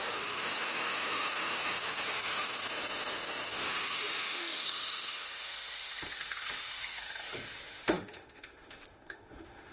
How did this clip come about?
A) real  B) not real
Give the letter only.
B